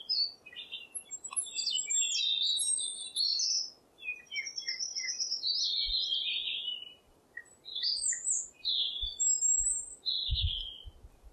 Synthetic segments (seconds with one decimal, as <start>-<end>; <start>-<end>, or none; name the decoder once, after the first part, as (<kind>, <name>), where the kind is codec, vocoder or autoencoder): none